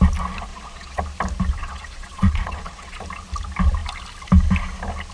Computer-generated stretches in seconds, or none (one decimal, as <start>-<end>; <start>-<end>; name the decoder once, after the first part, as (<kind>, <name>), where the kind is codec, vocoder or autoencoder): 0.5-1.0 (vocoder, Vocos); 1.6-3.0